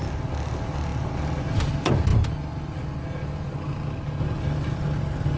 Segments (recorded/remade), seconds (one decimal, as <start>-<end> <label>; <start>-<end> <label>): 0.0-5.4 recorded